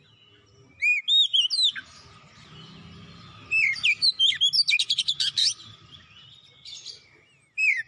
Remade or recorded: recorded